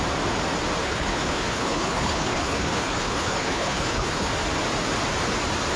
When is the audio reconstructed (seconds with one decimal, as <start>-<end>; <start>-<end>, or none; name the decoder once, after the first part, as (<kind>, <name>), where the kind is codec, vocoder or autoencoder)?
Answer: 0.8-4.3 (codec, HILCodec)